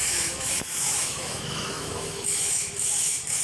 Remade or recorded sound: remade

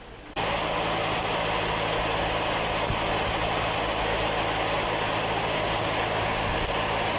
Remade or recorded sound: recorded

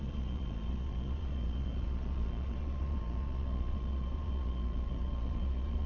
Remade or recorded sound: remade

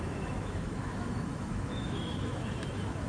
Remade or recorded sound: remade